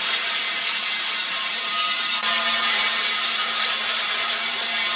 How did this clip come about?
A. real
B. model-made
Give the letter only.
B